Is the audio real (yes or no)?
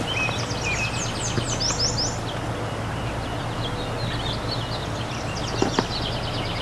yes